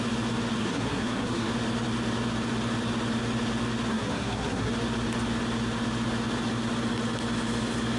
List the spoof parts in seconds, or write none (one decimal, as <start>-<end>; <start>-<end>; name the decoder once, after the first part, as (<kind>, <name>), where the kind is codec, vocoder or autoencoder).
0.6-1.5 (codec, SNAC); 3.9-4.7